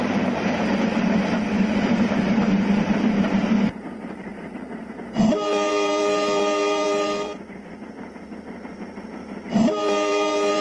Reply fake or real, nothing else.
fake